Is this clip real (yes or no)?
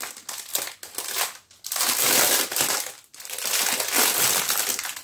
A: yes